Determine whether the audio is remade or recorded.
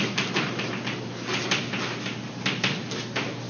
recorded